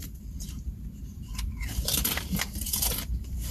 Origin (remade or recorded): remade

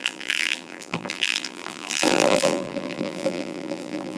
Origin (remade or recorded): remade